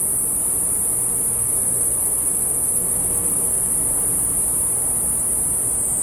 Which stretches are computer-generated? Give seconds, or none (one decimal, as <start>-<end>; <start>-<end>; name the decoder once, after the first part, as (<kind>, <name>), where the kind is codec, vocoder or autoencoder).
1.3-3.7 (codec, SNAC)